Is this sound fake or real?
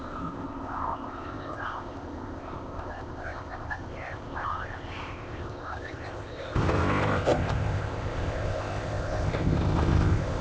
fake